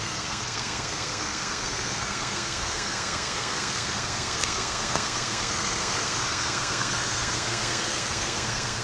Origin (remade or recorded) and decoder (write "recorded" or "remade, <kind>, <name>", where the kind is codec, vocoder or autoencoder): remade, codec, SNAC